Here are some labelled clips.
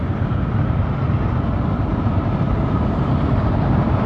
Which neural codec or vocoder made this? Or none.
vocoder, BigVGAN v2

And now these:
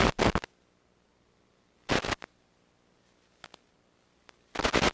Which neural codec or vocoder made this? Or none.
none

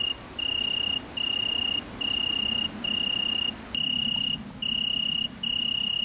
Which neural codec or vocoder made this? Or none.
none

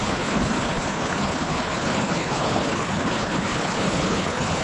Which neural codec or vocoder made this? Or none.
codec, HILCodec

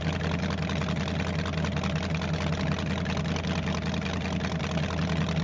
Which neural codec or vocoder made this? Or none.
none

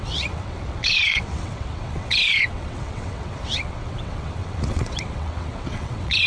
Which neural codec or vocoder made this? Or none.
vocoder, WaveNeXt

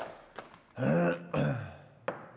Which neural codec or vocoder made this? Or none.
none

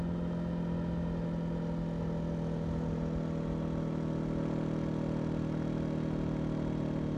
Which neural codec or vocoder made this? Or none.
none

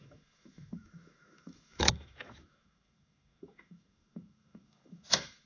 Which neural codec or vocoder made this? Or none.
autoencoder, DAC-VAE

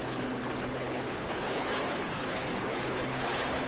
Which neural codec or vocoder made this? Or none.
codec, HILCodec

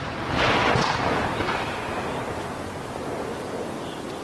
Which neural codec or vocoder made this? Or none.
none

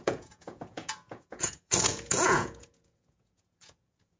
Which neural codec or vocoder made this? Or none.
vocoder, Vocos